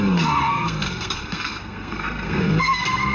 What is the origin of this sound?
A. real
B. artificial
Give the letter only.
B